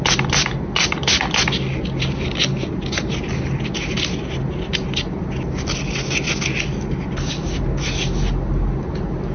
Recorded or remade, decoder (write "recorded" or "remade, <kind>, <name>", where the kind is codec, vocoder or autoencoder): recorded